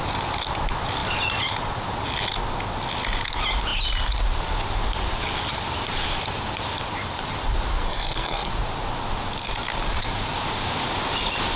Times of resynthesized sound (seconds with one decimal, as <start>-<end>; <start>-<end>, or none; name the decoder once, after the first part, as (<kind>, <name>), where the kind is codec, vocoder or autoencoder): 7.7-8.5 (codec, SNAC)